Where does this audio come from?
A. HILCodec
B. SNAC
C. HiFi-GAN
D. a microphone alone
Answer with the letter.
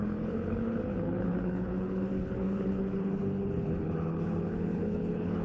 A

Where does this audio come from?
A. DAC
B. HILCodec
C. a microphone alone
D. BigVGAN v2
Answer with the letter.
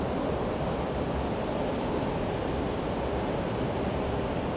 C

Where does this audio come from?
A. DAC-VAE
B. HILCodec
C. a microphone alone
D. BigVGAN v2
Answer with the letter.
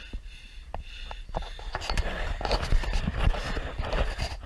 C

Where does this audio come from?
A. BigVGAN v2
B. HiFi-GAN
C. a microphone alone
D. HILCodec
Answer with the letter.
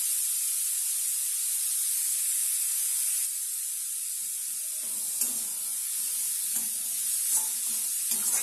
C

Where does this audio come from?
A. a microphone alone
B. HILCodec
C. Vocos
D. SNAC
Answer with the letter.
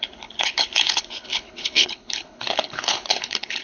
B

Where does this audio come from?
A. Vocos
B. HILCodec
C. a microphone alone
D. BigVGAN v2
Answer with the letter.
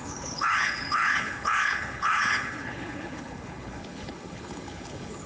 B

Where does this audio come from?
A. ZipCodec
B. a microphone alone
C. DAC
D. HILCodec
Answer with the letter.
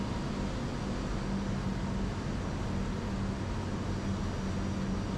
B